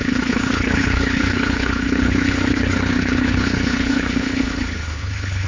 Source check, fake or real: fake